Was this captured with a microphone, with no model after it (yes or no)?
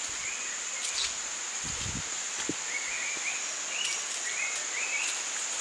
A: yes